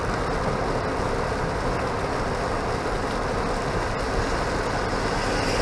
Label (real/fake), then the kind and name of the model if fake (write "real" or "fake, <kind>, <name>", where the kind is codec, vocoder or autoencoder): real